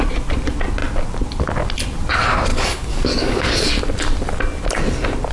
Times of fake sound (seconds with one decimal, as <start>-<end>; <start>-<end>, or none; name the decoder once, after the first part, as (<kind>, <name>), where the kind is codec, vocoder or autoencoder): 2.5-3.7 (codec, DAC)

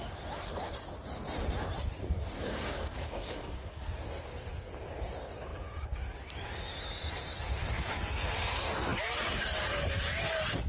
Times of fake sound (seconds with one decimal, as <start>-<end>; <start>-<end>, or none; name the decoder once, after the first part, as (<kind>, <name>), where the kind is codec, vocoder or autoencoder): 2.0-3.8 (codec, DAC)

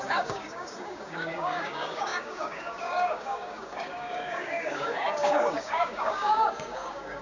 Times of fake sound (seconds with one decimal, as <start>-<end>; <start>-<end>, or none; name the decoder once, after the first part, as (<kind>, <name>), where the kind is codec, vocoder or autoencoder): 0.0-7.2 (codec, DAC)

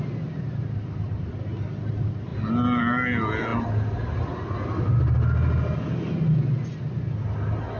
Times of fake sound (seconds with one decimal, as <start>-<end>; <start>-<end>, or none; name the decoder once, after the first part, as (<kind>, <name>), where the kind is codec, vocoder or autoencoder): none

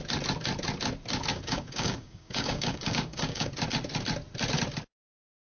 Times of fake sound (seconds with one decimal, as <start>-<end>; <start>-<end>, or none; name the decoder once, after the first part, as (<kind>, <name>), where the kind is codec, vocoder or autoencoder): 1.3-3.5 (codec, DAC)